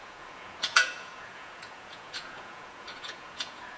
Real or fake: fake